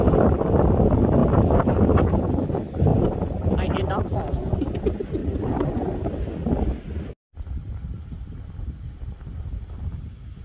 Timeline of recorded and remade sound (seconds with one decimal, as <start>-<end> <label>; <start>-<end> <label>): 0.0-1.2 recorded; 1.2-2.4 remade; 2.4-2.9 recorded; 2.9-4.2 remade; 4.2-5.2 recorded; 5.2-6.2 remade; 6.2-10.4 recorded